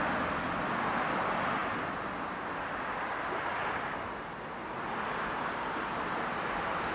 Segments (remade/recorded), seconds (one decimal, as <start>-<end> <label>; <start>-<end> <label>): 0.0-6.9 recorded